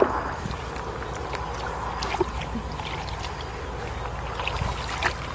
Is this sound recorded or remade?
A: recorded